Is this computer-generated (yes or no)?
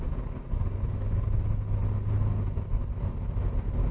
no